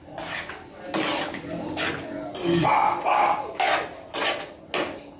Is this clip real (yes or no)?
yes